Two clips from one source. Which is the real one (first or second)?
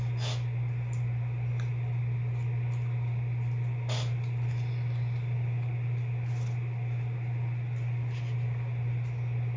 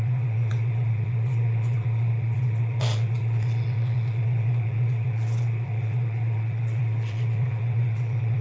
first